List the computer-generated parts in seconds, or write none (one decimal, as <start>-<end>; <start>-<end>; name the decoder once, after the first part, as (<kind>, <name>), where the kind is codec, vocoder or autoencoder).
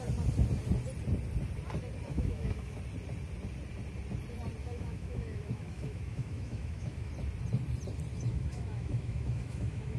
2.1-2.8 (autoencoder, DAC-VAE); 4.6-7.1; 8.1-10.0